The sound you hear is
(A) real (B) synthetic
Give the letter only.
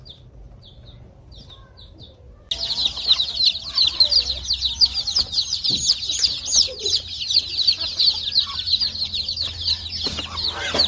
A